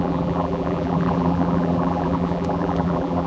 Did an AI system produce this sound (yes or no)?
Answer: yes